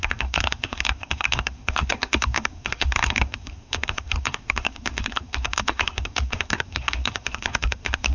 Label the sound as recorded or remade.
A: remade